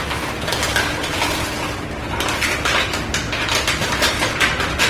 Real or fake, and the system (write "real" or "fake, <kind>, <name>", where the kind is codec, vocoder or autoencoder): real